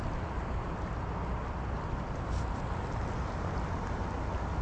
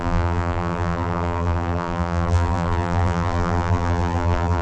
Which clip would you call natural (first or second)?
first